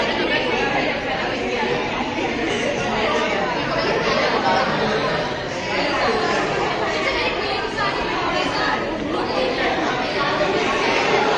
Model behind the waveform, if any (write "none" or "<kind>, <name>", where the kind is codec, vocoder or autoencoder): vocoder, BigVGAN v2